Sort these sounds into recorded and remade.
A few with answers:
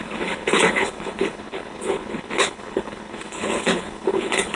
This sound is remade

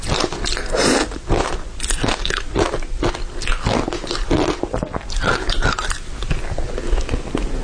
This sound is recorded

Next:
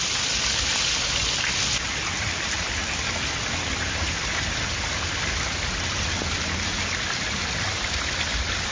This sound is recorded